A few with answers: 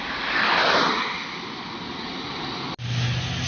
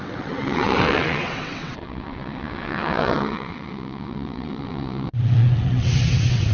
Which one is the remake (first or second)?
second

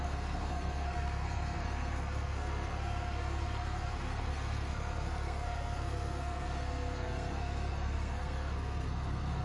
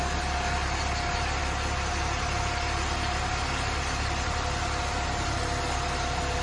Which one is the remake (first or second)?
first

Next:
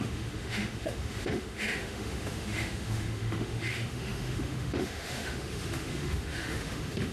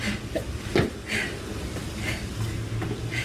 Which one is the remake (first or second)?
first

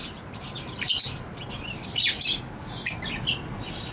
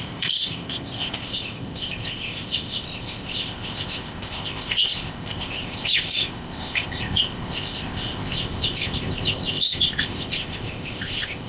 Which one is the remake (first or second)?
second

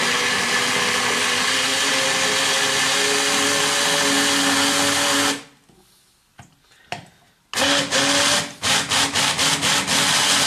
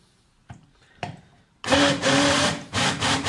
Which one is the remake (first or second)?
second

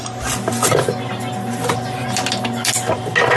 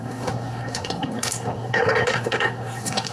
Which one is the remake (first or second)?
second